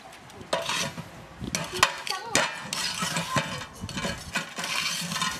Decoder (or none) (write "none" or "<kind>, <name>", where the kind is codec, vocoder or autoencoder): none